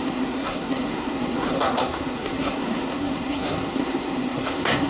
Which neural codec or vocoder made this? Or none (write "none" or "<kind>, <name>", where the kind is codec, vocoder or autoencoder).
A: codec, SNAC